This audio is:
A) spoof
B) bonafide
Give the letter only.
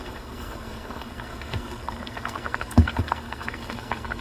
A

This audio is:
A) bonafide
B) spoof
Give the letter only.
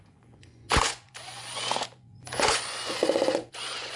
B